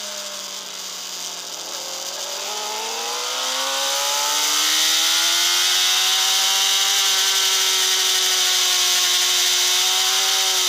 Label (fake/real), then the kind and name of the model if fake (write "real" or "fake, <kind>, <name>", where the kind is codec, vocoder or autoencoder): real